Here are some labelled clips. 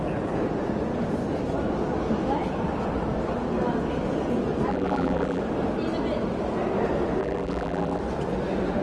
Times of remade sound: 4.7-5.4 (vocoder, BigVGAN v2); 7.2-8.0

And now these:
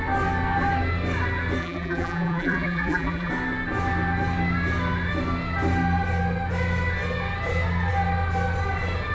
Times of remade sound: 1.6-3.3 (vocoder, BigVGAN v2)

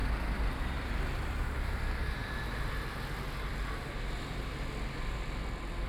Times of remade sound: none

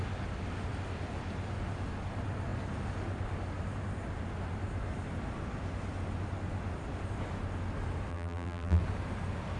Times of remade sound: 8.1-8.8 (vocoder, BigVGAN v2)